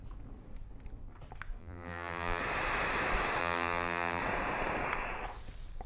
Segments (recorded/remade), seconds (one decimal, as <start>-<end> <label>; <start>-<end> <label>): 0.0-1.6 recorded; 1.6-2.4 remade; 2.4-3.4 recorded; 3.4-4.2 remade; 4.2-5.9 recorded

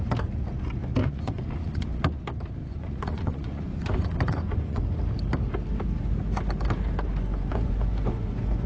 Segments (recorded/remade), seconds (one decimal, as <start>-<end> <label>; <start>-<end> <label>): 0.0-1.0 recorded; 1.0-1.8 remade; 1.8-2.6 recorded; 2.6-4.8 remade; 4.8-7.1 recorded; 7.1-8.7 remade

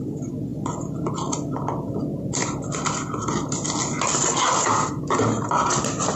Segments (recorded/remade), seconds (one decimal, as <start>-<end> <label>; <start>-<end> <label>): 0.0-6.2 recorded

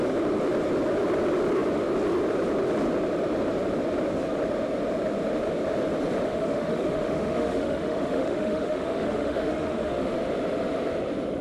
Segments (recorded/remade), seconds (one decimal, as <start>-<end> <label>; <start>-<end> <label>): 0.0-6.3 recorded; 6.3-10.1 remade; 10.1-11.4 recorded